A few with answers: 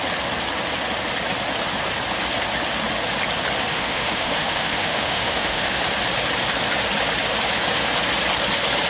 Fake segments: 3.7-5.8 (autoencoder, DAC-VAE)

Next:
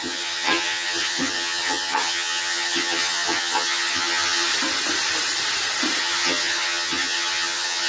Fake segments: 0.0-4.5 (vocoder, HiFi-GAN); 6.0-7.9

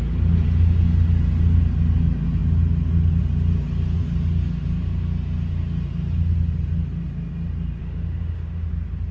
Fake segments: 7.8-8.7 (autoencoder, DAC-VAE)

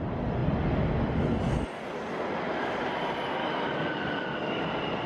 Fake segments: 3.4-4.6 (codec, DAC)

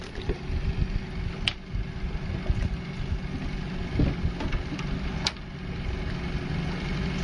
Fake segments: none

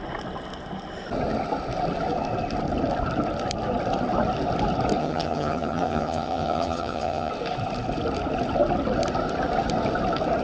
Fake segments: 5.0-7.3 (vocoder, HiFi-GAN)